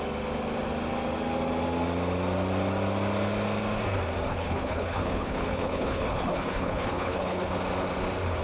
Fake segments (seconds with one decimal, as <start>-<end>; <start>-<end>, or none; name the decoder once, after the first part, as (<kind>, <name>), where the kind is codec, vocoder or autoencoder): 4.3-7.5 (codec, HILCodec)